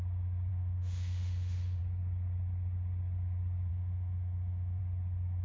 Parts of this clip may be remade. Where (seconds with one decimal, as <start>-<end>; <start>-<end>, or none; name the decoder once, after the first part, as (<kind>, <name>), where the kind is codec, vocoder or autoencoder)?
0.5-1.8 (autoencoder, DAC-VAE); 3.7-4.8